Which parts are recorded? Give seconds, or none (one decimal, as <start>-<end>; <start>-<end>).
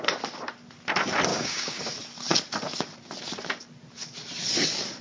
0.0-1.3; 1.8-5.0